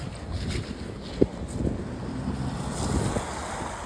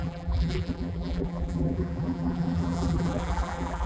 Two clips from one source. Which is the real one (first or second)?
first